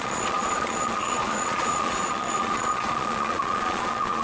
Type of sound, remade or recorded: remade